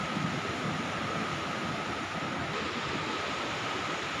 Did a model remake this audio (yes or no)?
no